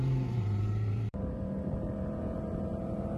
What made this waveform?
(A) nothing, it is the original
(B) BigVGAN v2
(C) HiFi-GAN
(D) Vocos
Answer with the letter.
B